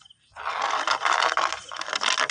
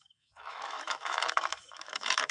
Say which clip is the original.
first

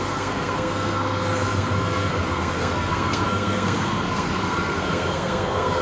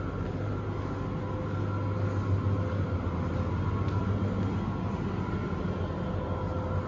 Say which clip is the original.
second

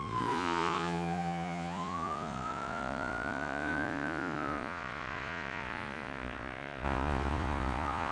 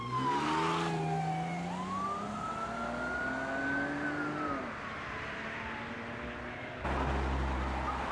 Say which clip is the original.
second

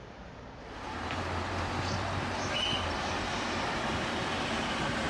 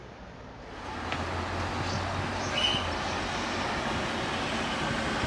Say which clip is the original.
second